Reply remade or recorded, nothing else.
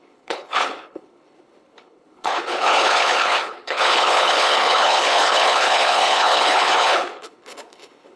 remade